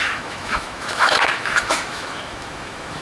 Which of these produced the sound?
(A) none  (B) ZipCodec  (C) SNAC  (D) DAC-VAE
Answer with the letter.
D